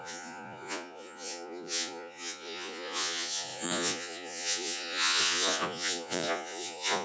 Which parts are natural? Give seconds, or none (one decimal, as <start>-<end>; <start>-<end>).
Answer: none